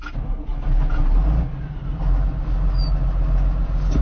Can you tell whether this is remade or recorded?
recorded